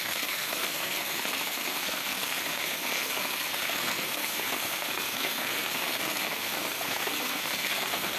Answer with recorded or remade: remade